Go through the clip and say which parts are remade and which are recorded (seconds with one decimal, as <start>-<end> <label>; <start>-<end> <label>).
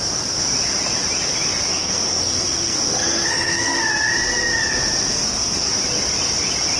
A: 0.0-1.7 recorded; 1.7-3.8 remade; 3.8-5.1 recorded; 5.1-5.7 remade; 5.7-6.8 recorded